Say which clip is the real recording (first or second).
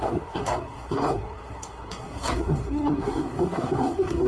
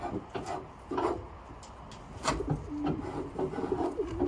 second